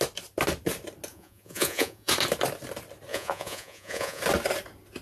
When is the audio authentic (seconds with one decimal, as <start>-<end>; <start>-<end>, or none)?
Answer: 0.0-1.1; 2.1-3.1; 4.2-5.0